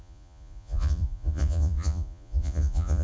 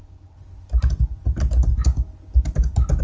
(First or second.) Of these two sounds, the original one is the second